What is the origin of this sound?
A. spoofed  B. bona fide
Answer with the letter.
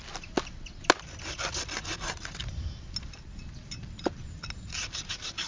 B